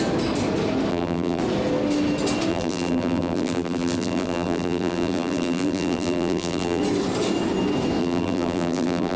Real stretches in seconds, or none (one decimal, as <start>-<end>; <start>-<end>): 0.0-0.9; 1.4-2.5; 6.8-8.0